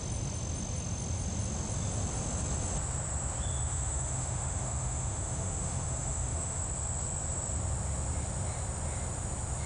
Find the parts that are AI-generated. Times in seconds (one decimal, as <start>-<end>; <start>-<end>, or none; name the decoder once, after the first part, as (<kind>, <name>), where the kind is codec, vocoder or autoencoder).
3.5-6.6 (autoencoder, DAC-VAE)